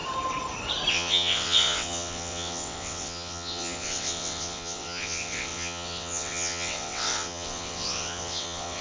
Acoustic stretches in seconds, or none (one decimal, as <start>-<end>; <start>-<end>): 0.0-0.9

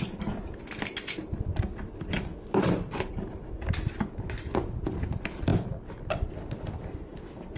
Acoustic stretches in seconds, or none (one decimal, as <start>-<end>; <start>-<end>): 0.0-7.6

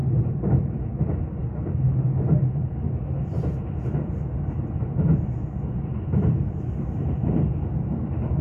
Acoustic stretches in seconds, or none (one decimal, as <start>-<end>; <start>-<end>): 0.5-8.4

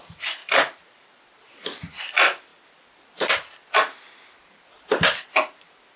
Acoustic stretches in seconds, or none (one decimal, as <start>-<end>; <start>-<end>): 0.0-0.4; 1.2-6.0

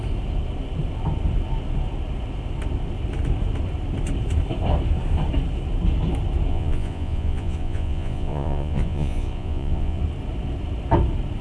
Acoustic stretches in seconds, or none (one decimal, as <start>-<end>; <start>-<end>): 0.0-6.5; 10.0-11.4